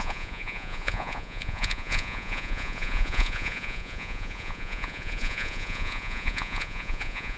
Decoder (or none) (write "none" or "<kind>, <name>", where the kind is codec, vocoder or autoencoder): vocoder, Vocos